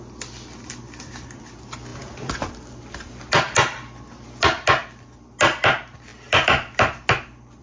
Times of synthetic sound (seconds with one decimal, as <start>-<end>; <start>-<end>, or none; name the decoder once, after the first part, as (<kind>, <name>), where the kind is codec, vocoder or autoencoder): none